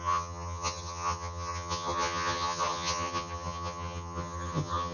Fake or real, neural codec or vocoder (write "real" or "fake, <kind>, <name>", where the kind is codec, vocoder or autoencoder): fake, vocoder, HiFi-GAN